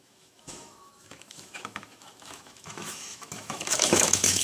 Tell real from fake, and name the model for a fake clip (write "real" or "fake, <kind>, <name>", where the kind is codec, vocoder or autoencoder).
fake, autoencoder, DAC-VAE